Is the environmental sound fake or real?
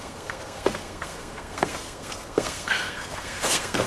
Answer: fake